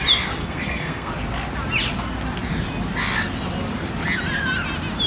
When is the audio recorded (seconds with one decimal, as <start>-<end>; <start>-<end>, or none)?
0.0-0.4; 1.1-5.1